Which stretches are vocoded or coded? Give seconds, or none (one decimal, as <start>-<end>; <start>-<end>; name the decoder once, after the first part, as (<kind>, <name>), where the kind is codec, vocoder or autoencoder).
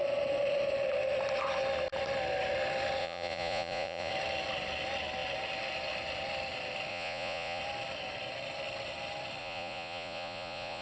3.0-4.1 (vocoder, Vocos); 6.9-7.6; 9.4-10.8